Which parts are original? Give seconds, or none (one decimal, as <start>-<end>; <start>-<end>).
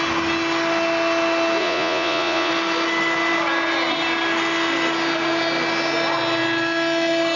0.0-1.6; 2.5-7.4